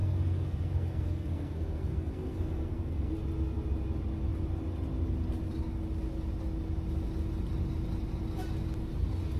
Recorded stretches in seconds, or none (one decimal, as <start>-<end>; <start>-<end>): 3.1-9.4